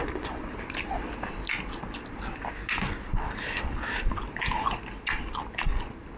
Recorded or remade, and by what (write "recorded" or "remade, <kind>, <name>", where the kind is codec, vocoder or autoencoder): recorded